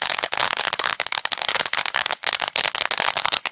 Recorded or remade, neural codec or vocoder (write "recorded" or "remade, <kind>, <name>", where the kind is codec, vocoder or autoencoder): remade, codec, HILCodec